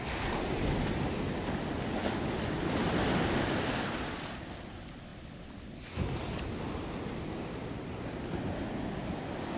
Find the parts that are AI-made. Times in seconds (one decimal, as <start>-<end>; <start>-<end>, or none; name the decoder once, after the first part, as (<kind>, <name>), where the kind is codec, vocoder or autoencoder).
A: none